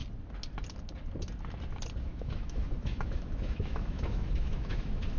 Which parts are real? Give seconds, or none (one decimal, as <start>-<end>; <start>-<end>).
0.0-2.1